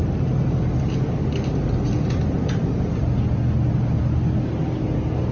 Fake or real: real